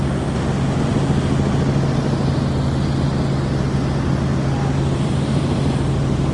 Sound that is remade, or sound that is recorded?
recorded